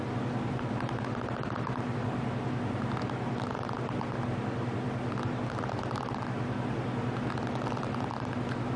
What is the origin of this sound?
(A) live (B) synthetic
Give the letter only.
A